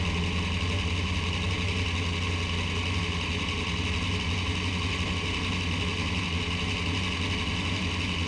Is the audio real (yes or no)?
yes